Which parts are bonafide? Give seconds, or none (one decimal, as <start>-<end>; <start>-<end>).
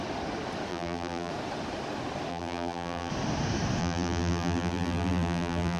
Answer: 0.0-0.7; 1.3-2.3; 3.1-3.8